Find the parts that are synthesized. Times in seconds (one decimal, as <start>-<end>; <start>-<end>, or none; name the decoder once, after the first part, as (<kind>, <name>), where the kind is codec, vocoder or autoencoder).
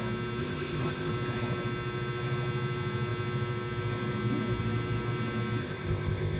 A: 0.4-1.1 (codec, ZipCodec); 5.6-6.4